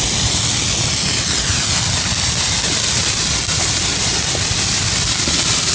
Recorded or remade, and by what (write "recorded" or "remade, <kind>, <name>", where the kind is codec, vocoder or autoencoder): recorded